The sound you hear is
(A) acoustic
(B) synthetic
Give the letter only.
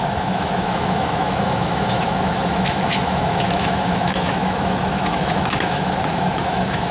B